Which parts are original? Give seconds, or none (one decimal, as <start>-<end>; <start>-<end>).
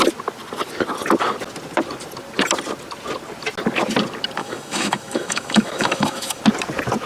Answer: 0.0-4.4; 6.4-7.1